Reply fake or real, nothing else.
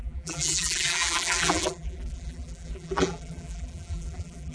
fake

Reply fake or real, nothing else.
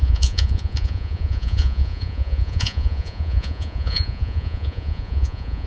fake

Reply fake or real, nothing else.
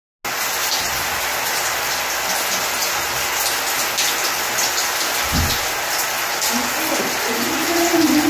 real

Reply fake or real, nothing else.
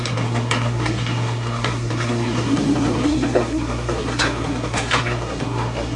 fake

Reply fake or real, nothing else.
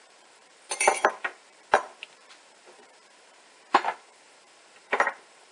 fake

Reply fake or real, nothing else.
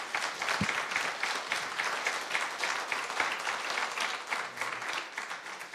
real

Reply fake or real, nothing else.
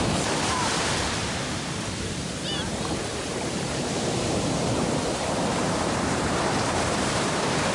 fake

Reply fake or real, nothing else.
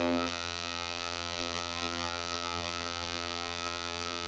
fake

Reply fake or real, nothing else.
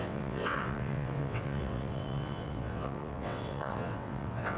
fake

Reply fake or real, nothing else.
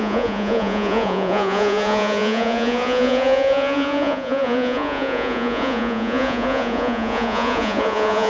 fake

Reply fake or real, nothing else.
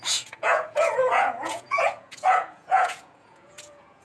fake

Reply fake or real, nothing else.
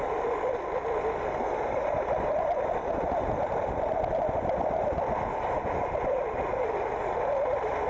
real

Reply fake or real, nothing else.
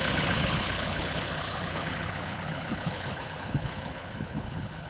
fake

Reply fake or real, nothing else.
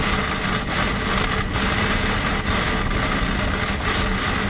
real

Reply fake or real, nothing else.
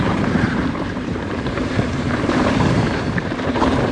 fake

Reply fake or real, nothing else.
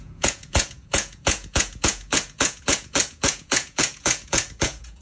fake